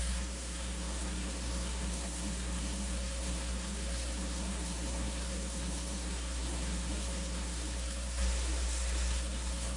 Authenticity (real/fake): fake